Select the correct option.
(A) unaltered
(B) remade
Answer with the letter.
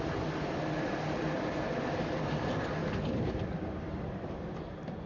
A